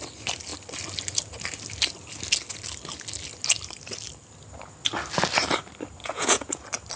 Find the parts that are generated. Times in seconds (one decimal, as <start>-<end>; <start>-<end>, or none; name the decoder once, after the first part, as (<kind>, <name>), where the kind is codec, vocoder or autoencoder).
6.0-6.6 (vocoder, Vocos)